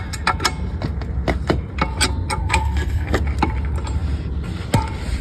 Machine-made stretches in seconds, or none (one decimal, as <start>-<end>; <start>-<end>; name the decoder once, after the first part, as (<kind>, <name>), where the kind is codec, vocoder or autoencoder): 2.4-3.2 (codec, SNAC)